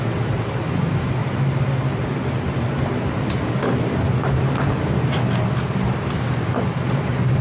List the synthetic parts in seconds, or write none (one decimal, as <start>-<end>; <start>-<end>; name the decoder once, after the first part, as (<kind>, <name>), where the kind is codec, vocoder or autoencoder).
none